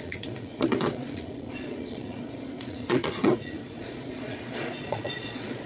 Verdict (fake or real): fake